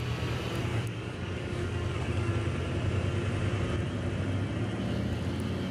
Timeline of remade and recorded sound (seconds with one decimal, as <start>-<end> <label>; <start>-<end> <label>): 0.0-0.7 recorded; 0.7-2.3 remade; 2.3-5.7 recorded

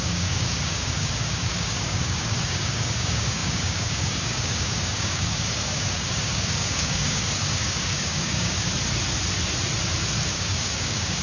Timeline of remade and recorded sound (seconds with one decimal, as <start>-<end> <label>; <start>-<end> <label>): 0.0-8.7 remade; 8.7-10.3 recorded; 10.3-11.2 remade